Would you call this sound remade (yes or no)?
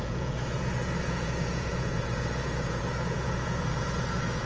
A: yes